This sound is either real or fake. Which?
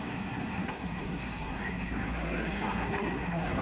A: fake